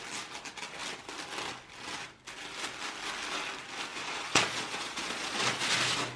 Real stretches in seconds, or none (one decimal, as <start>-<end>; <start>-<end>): 0.0-3.9; 5.7-6.2